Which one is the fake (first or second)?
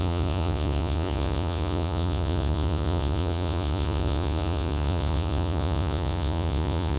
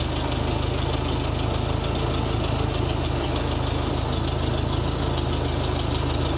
first